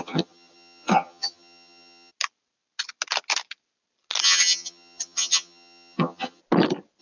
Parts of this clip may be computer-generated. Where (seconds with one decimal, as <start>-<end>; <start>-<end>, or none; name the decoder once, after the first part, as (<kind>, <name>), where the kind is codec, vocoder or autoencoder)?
0.0-2.1 (vocoder, HiFi-GAN); 4.2-6.4